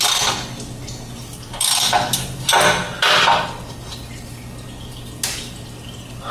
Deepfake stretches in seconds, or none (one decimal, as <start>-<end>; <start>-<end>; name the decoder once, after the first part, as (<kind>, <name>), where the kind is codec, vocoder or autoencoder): none